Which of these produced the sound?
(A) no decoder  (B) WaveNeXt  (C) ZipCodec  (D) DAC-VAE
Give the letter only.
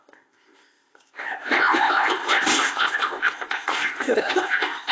C